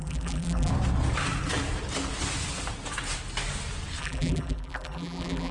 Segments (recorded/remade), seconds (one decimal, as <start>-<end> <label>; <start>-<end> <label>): 0.0-0.7 remade; 0.7-4.0 recorded; 4.0-5.5 remade